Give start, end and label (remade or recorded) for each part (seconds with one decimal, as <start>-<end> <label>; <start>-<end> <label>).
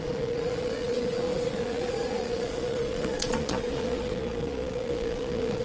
0.0-5.6 remade